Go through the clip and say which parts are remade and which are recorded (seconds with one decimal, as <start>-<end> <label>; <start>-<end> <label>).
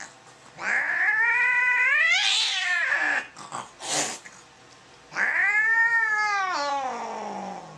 0.0-7.8 recorded